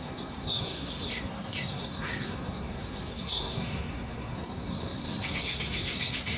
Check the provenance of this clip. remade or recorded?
remade